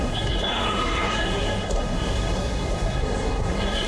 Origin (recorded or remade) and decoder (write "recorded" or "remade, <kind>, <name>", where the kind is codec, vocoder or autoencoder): remade, codec, SNAC